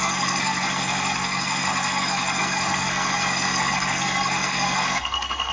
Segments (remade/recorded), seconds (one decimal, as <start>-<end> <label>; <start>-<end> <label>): 0.0-5.5 remade